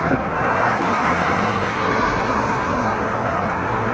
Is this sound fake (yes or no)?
yes